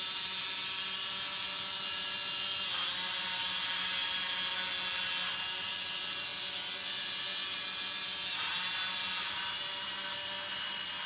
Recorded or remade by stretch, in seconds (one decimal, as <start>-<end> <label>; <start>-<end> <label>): 0.0-11.1 recorded